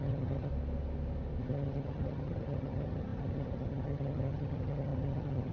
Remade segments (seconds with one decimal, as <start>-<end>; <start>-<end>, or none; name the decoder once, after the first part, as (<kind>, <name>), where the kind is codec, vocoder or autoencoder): 0.0-0.5 (vocoder, HiFi-GAN); 1.4-5.5